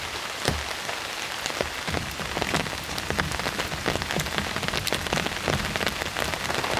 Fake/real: real